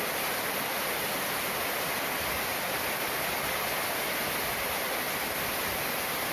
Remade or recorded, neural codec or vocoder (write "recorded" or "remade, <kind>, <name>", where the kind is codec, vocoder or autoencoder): recorded